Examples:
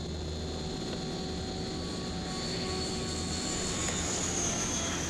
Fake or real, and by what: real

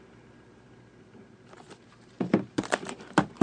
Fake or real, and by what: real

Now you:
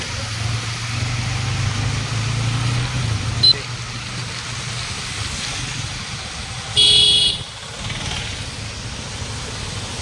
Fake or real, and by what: real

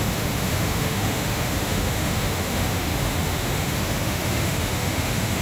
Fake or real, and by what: fake, autoencoder, DAC-VAE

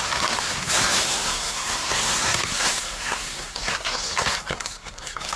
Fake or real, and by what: fake, codec, SNAC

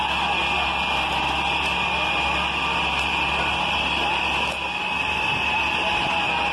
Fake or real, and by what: real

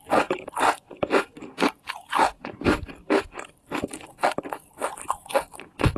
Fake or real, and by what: real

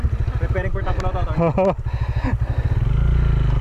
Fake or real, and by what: real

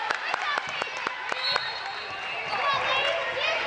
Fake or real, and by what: real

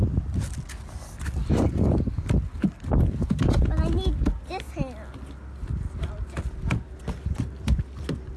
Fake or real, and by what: real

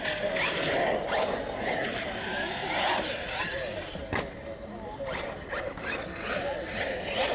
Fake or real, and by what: real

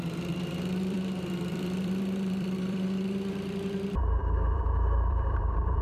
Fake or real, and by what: fake, vocoder, BigVGAN v2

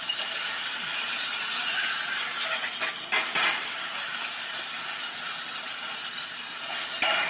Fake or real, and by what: real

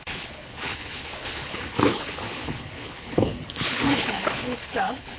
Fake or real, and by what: fake, codec, HILCodec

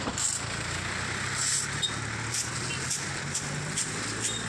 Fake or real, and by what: real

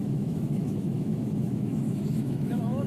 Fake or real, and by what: fake, autoencoder, DAC-VAE